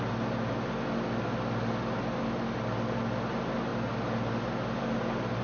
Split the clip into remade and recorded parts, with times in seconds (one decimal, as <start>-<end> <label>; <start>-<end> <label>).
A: 0.0-5.4 recorded